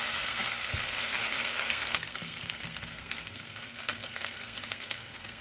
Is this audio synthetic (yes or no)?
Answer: yes